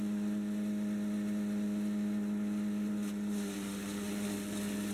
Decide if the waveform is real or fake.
real